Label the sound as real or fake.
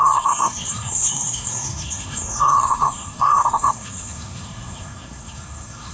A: fake